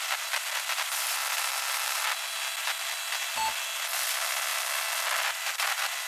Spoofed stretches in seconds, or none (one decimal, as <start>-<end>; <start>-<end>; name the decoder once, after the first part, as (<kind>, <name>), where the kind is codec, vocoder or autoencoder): none